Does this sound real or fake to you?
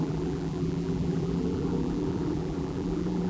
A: fake